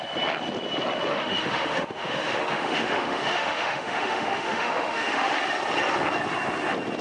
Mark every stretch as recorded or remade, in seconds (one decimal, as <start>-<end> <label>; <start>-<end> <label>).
0.0-1.1 recorded; 1.1-5.3 remade; 5.3-7.0 recorded